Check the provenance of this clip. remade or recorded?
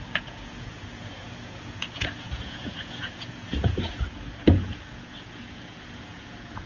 remade